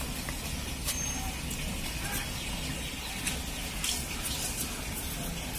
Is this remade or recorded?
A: recorded